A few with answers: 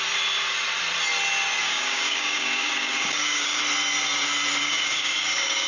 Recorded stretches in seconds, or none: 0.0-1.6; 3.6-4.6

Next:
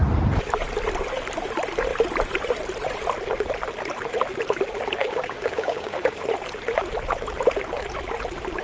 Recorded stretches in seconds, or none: 0.0-5.0; 6.2-8.6